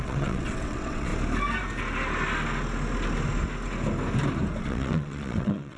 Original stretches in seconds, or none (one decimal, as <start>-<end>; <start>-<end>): 1.1-4.6